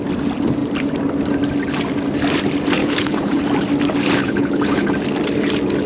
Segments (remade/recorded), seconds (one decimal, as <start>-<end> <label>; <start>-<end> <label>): 0.0-2.8 recorded; 2.8-3.4 remade; 3.4-4.2 recorded; 4.2-4.9 remade; 4.9-5.9 recorded